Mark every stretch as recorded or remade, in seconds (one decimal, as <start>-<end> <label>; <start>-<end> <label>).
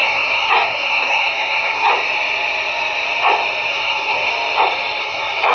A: 0.0-1.9 remade; 1.9-3.7 recorded; 3.7-4.3 remade; 4.3-5.0 recorded; 5.0-5.5 remade